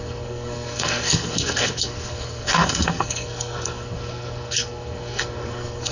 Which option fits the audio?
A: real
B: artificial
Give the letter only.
B